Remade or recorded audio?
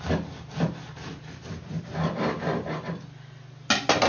recorded